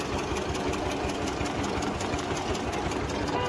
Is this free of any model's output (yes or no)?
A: yes